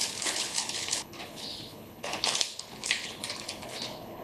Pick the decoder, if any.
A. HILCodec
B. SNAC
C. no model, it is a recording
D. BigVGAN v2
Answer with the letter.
A